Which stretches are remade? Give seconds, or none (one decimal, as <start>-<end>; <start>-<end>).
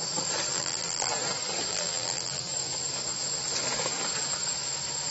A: 0.5-1.1; 1.7-2.5